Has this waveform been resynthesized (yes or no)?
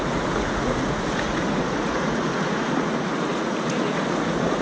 yes